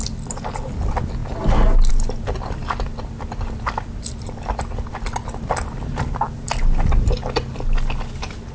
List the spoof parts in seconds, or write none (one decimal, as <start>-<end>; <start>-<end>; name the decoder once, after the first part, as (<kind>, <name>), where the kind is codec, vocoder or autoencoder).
none